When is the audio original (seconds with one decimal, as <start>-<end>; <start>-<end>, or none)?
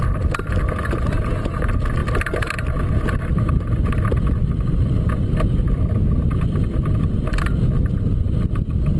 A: 0.0-9.0